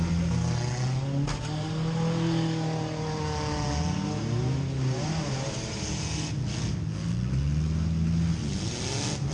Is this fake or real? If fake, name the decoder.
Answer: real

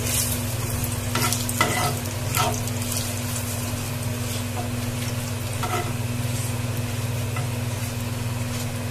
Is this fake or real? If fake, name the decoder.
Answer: real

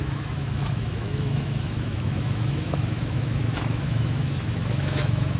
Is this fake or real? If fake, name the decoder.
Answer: fake, autoencoder, DAC-VAE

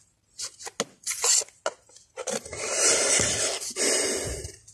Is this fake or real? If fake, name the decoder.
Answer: real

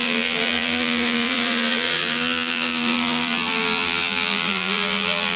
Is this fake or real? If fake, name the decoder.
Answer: fake, vocoder, BigVGAN v2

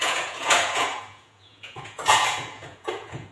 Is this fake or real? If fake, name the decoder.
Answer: fake, vocoder, Vocos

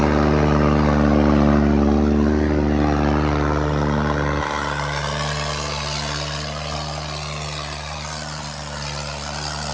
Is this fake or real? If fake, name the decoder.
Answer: real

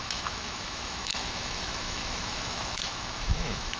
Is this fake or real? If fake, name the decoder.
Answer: fake, autoencoder, DAC-VAE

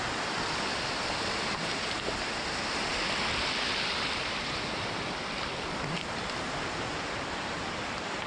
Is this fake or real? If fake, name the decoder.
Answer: real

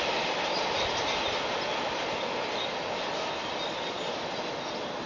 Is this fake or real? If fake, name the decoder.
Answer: real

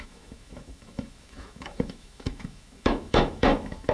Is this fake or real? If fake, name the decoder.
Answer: fake, autoencoder, DAC-VAE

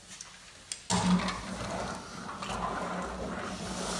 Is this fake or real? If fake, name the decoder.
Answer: real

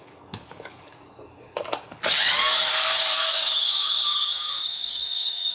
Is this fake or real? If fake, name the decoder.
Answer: fake, codec, DAC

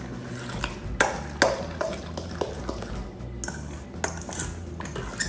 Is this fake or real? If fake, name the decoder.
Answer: real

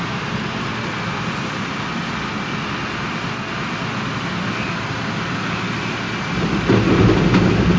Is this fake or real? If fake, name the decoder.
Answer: real